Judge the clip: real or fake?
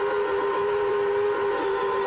fake